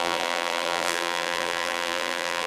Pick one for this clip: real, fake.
fake